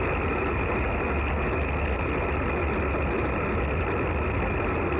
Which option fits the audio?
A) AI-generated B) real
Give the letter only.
B